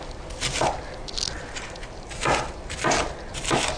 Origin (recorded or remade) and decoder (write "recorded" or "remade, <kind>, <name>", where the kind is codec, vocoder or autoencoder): recorded